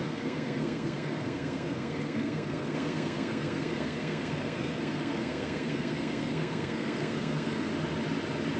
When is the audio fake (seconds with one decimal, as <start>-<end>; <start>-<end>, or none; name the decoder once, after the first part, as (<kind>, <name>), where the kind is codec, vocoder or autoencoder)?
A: 0.0-7.7 (codec, SNAC)